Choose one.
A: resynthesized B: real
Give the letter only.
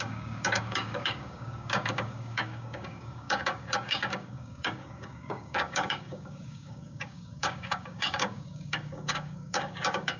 A